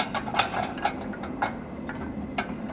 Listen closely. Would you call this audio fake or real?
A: real